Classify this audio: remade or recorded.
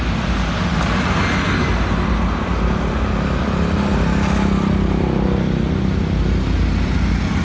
recorded